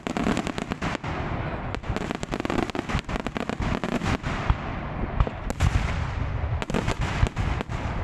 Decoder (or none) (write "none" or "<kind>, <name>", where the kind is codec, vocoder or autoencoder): none